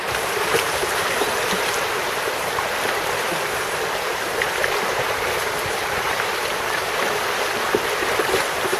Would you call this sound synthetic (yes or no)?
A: yes